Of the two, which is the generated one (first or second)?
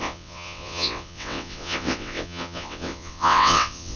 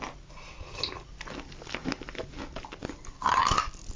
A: first